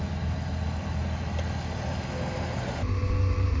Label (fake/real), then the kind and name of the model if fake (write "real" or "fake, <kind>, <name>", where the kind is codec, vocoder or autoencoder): real